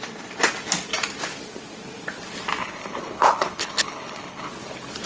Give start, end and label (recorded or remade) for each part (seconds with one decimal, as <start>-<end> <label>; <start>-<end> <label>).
0.0-2.6 recorded; 2.6-4.5 remade; 4.5-5.1 recorded